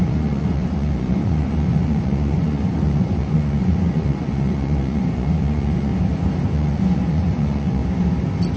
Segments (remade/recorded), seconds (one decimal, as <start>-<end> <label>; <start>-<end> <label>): 0.0-5.9 remade; 5.9-6.5 recorded; 6.5-7.8 remade; 7.8-8.6 recorded